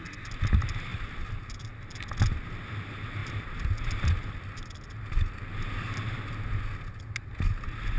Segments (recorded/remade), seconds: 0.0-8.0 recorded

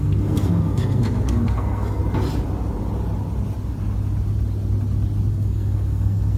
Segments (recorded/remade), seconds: 0.0-2.0 remade; 2.0-5.3 recorded; 5.3-6.4 remade